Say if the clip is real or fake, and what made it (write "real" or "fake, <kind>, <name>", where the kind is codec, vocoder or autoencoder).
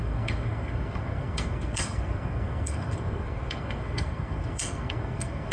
fake, codec, SNAC